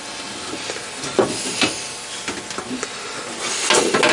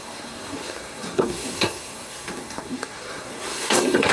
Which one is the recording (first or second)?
first